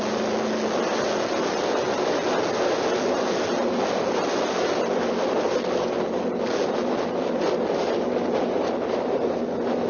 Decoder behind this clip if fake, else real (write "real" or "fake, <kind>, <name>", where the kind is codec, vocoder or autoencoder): real